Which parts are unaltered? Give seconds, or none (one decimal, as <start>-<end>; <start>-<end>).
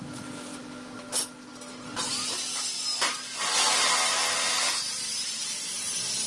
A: 0.0-6.3